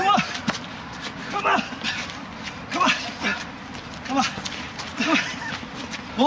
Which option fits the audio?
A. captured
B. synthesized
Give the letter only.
A